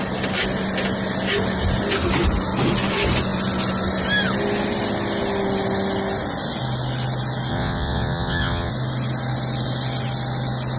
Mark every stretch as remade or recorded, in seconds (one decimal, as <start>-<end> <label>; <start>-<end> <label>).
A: 0.0-7.5 recorded; 7.5-8.7 remade; 8.7-10.8 recorded